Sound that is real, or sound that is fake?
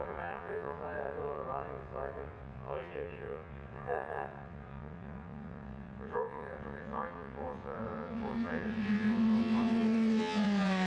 fake